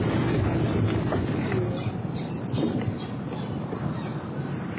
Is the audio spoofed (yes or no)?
no